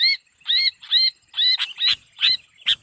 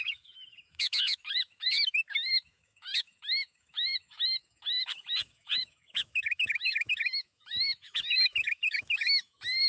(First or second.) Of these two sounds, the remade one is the second